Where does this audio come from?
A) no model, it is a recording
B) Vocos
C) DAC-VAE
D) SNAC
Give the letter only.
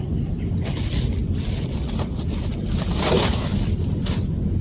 A